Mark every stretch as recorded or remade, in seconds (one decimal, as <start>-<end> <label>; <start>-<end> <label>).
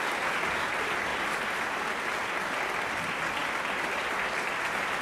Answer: 0.0-5.0 recorded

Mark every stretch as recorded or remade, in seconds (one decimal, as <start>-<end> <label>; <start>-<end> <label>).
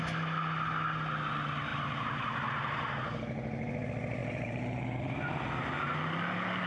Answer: 0.0-4.2 recorded; 4.2-5.0 remade; 5.0-6.7 recorded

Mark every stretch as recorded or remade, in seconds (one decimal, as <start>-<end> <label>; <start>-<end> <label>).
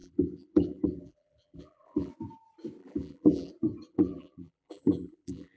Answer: 0.0-2.1 remade; 2.1-2.8 recorded; 2.8-3.5 remade; 3.5-3.9 recorded; 3.9-5.6 remade